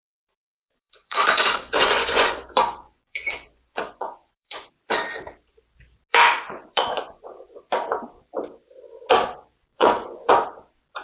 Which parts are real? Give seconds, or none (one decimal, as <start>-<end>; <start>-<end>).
4.7-6.1; 7.6-9.7; 10.3-11.0